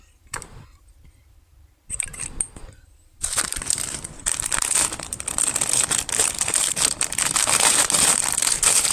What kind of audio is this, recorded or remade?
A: remade